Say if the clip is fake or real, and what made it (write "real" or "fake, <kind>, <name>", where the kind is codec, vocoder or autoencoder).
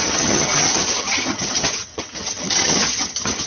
fake, vocoder, HiFi-GAN